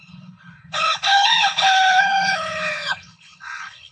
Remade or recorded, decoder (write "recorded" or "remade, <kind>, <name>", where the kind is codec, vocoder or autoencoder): remade, codec, HILCodec